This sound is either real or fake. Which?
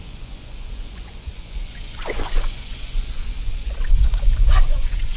fake